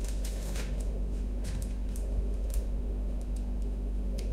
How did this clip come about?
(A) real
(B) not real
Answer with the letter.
B